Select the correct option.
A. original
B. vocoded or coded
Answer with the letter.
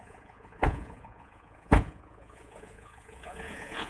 B